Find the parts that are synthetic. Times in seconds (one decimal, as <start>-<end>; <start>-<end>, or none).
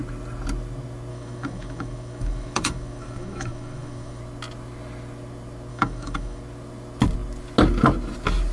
1.1-4.2; 5.7-6.4